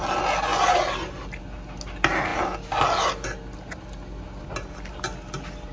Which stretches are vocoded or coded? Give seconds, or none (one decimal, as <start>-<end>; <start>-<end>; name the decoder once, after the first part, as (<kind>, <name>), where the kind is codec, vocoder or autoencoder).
none